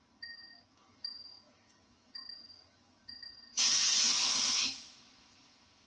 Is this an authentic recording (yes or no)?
no